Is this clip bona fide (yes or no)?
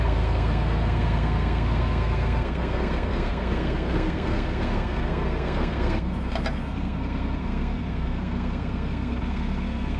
no